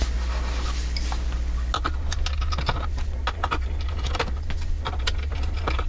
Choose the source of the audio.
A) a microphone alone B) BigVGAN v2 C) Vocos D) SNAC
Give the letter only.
A